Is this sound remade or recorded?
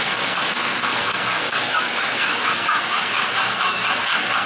remade